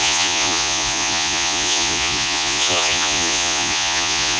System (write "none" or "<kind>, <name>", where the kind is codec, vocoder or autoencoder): vocoder, Vocos